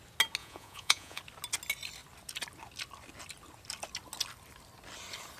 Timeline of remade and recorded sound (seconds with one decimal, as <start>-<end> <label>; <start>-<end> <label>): 0.0-0.4 recorded; 0.4-1.2 remade; 1.2-5.4 recorded